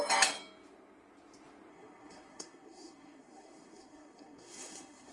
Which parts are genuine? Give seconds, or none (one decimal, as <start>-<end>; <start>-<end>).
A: 0.0-1.7